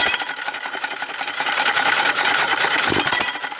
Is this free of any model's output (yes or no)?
yes